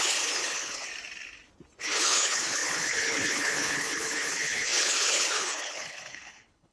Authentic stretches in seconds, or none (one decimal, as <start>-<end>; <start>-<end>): 0.9-1.8